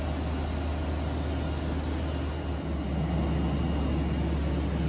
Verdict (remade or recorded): recorded